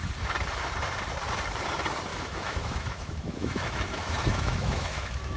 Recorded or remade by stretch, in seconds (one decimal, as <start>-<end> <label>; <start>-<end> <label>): 0.0-2.1 recorded; 2.1-5.4 remade